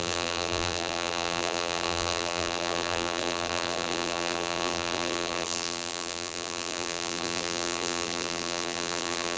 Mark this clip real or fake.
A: fake